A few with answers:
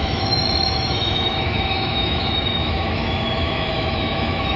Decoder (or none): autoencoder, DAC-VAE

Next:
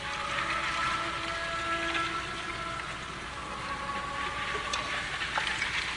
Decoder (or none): none